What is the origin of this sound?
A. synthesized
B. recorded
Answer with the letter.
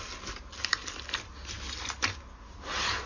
B